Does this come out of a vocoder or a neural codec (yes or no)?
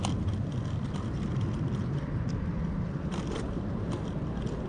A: no